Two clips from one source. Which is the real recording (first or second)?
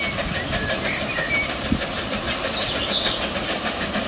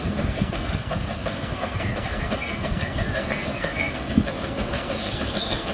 first